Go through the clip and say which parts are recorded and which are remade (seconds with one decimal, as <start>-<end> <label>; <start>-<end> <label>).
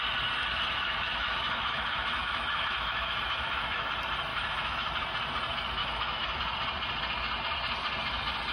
0.0-0.4 recorded; 0.4-3.9 remade; 3.9-4.3 recorded; 4.3-4.9 remade; 4.9-5.8 recorded; 5.8-6.4 remade; 6.4-8.5 recorded